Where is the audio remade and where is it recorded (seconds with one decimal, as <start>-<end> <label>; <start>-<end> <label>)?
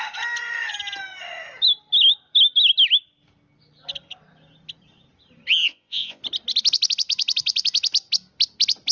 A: 0.0-5.7 recorded; 5.7-6.2 remade; 6.2-8.9 recorded